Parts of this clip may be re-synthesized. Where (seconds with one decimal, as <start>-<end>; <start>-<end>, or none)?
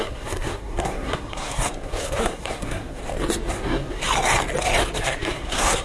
0.0-3.0; 3.5-4.0; 5.0-5.8